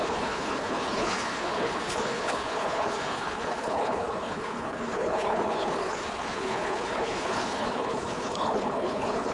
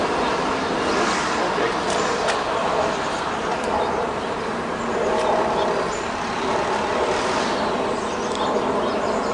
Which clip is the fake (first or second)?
first